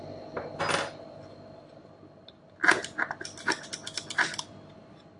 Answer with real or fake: real